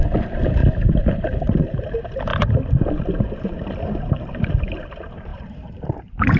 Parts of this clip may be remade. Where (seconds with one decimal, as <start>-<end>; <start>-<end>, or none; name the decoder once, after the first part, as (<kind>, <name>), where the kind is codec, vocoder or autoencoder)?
0.0-0.6 (vocoder, BigVGAN v2); 1.1-2.3; 3.0-6.4